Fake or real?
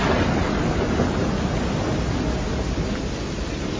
real